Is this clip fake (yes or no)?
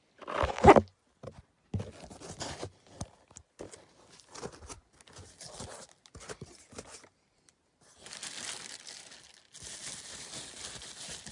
no